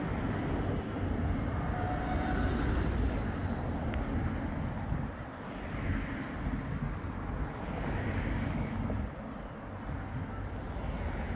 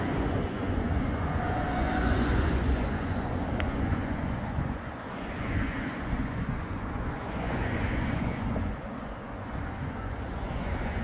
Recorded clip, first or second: first